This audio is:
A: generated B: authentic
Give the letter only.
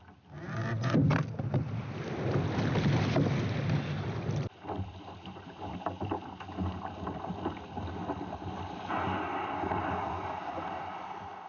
B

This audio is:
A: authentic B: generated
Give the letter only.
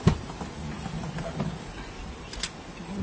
A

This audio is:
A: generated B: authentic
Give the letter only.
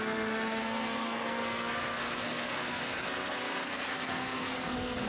A